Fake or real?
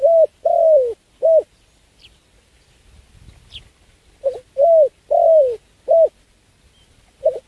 real